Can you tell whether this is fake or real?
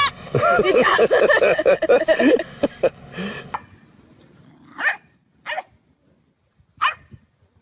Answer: real